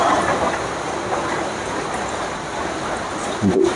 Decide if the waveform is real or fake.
real